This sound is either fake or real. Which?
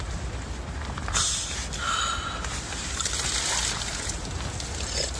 real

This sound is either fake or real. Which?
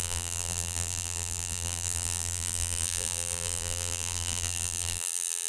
fake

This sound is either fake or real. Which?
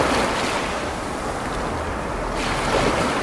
real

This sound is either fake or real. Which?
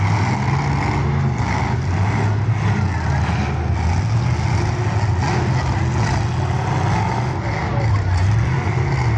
real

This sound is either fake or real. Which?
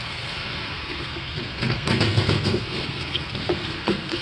fake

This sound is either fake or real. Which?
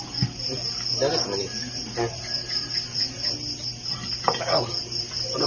real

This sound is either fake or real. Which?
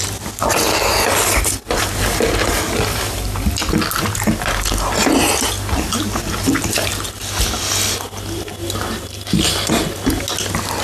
real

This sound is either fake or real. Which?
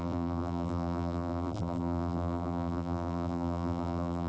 fake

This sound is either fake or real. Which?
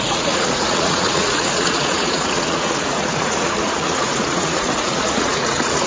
fake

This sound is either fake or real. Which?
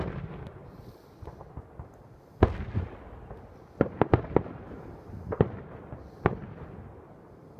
real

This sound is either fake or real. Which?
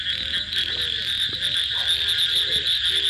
real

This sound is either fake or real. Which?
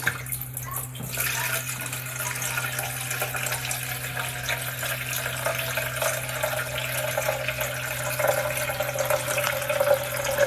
real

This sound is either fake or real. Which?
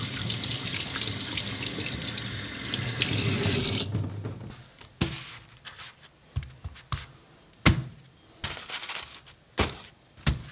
real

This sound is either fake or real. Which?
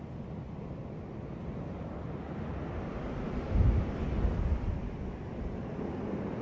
real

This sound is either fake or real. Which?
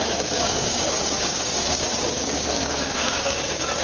fake